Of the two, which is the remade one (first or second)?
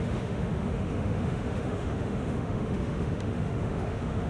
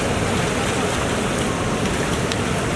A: first